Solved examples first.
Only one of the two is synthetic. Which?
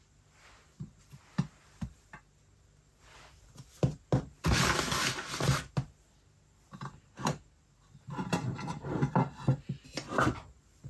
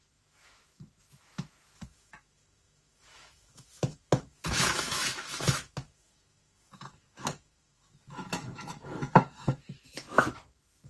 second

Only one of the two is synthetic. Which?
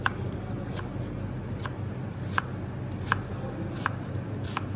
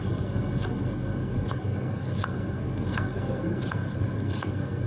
second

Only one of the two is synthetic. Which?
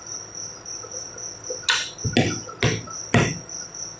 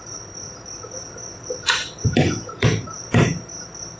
second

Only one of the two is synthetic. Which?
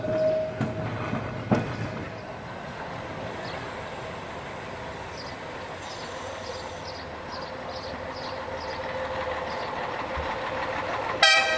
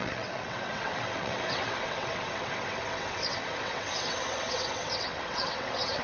second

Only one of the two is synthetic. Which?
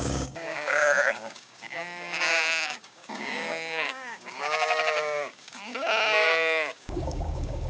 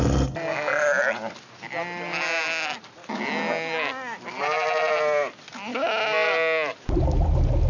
first